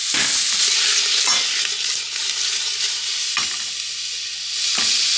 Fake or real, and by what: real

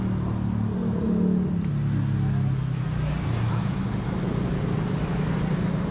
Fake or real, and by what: real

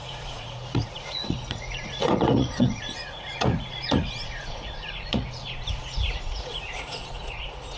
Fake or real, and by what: fake, vocoder, Vocos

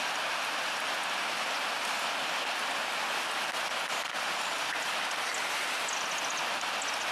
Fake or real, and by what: real